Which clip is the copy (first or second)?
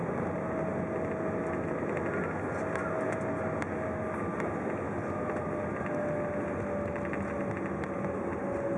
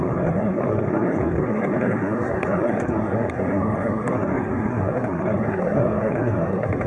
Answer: second